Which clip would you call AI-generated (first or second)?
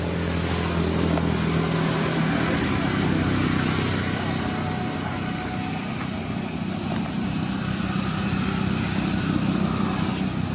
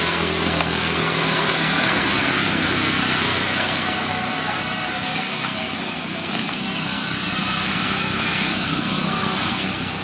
second